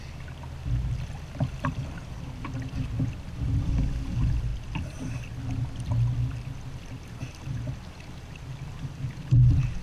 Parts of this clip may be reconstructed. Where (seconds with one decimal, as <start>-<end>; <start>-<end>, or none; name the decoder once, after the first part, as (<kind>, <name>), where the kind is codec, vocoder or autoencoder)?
none